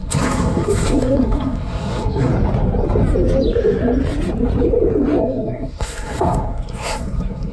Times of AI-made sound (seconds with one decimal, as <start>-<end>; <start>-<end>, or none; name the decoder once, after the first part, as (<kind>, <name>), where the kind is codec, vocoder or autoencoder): 0.0-2.3 (codec, SNAC); 5.2-7.5